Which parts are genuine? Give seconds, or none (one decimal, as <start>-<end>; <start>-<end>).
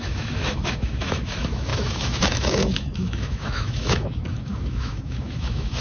none